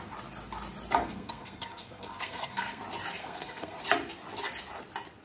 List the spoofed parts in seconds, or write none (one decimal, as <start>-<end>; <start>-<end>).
1.0-2.8; 3.2-3.8